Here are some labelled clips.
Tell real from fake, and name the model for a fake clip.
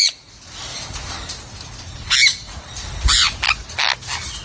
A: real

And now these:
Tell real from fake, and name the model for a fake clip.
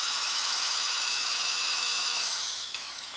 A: fake, autoencoder, DAC-VAE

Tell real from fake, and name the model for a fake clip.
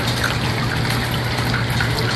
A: real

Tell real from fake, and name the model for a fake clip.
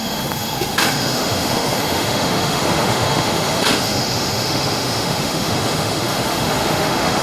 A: fake, autoencoder, DAC-VAE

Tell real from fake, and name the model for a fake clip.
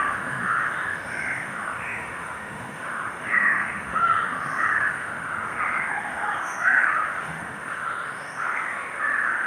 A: fake, autoencoder, DAC-VAE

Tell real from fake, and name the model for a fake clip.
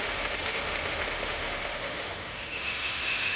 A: fake, autoencoder, DAC-VAE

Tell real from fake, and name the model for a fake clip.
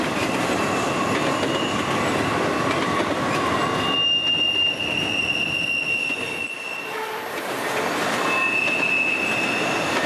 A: real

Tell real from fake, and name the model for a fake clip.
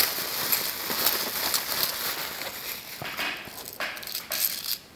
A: real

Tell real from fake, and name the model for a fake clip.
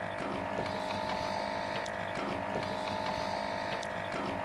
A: real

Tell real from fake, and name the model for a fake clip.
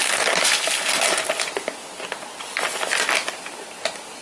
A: real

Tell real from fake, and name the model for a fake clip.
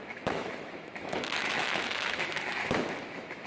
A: fake, autoencoder, DAC-VAE